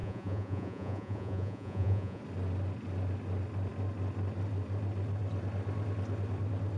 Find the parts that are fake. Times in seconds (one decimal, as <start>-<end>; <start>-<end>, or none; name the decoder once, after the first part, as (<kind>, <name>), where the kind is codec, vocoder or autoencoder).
0.0-2.2 (vocoder, Vocos)